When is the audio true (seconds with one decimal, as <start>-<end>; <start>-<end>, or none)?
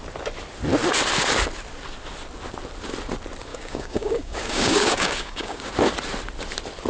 0.0-3.5; 5.7-6.9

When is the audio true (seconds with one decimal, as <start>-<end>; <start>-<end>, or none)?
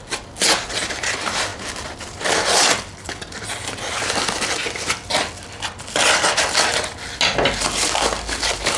0.0-8.8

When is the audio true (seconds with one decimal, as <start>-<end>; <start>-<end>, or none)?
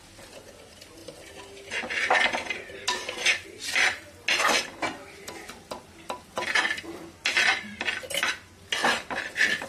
0.0-9.7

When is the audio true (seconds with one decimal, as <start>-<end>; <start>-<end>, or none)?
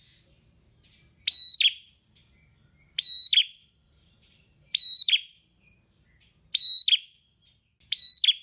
0.0-3.4; 5.8-8.4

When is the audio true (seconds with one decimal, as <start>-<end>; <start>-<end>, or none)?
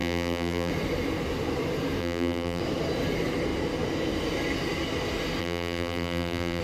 0.7-2.0; 2.6-5.4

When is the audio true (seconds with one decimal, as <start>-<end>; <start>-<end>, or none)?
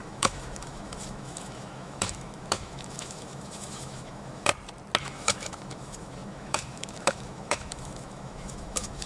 4.5-5.0